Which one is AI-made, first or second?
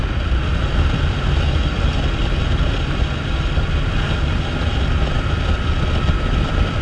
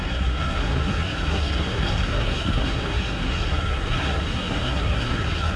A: second